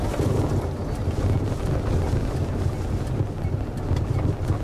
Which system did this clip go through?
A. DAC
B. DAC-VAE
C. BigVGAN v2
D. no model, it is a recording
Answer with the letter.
D